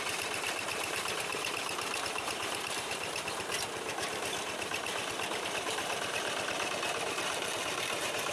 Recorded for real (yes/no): no